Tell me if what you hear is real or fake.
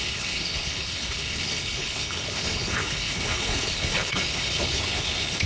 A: fake